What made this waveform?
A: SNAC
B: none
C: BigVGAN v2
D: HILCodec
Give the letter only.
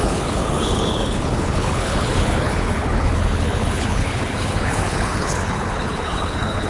D